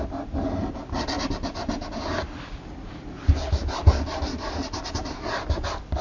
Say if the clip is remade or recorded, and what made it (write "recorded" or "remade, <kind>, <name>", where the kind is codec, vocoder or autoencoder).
recorded